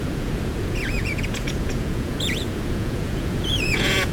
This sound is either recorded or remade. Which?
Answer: remade